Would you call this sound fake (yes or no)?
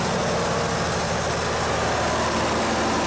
no